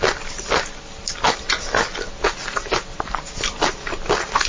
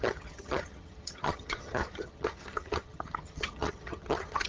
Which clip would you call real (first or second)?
first